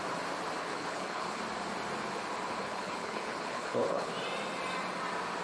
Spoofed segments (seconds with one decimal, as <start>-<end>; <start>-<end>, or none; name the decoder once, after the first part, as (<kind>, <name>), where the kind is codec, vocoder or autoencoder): 0.6-1.4 (codec, HILCodec); 2.6-4.1